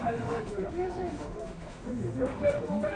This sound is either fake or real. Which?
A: fake